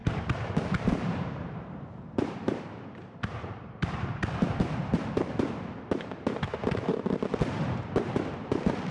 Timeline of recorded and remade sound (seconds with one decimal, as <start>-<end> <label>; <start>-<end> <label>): 0.0-5.1 remade; 5.1-6.6 recorded; 6.6-8.3 remade; 8.3-8.9 recorded